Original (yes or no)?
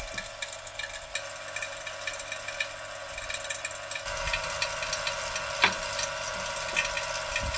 yes